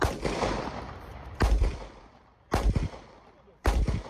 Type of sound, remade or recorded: remade